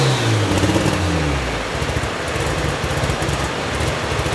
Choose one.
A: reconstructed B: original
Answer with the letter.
B